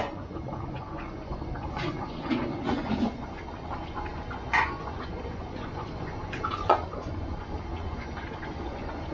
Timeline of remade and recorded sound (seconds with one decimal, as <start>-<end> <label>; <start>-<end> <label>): 0.0-9.1 remade